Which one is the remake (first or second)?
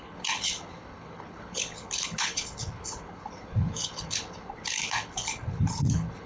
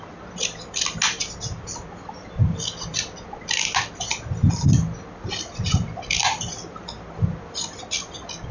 first